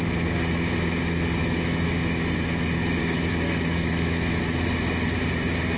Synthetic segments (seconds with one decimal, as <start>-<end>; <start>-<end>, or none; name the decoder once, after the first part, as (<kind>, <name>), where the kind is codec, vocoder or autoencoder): 1.4-1.9 (autoencoder, DAC-VAE); 3.0-4.4